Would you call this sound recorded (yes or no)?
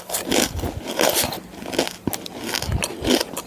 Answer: yes